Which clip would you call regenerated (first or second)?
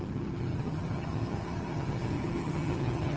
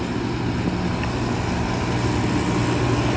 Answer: first